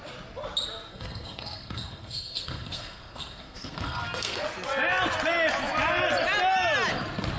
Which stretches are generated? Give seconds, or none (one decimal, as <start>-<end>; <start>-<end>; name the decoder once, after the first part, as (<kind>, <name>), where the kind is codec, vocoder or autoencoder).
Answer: 0.9-4.4 (codec, SNAC)